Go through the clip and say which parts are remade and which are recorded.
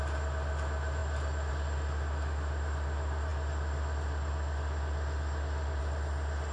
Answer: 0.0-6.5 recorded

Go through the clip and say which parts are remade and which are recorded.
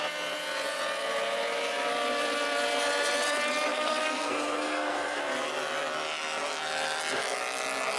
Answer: 0.0-3.7 recorded; 3.7-5.2 remade; 5.2-8.0 recorded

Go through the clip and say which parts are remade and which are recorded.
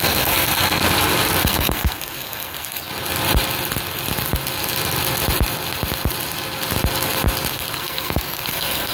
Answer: 0.0-0.8 remade; 0.8-1.4 recorded; 1.4-2.9 remade; 2.9-7.5 recorded; 7.5-8.9 remade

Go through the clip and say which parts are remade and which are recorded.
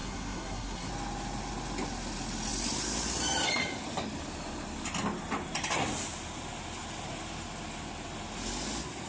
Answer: 0.0-0.9 remade; 0.9-9.1 recorded